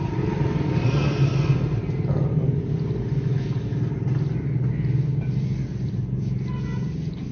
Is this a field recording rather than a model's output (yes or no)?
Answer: yes